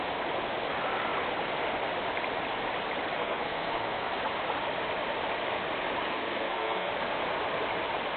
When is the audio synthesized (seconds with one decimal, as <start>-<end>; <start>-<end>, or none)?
3.2-4.1; 6.1-6.9